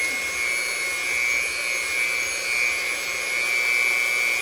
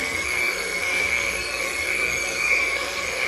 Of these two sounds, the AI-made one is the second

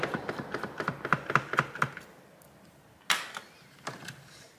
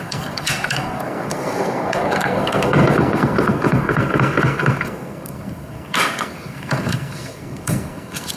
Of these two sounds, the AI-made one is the second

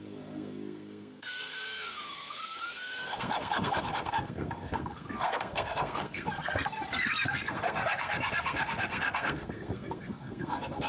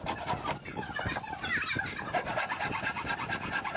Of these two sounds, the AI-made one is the first